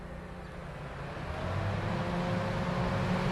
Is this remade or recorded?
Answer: recorded